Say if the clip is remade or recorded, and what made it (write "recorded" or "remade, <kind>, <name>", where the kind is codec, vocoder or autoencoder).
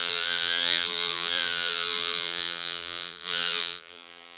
remade, vocoder, BigVGAN v2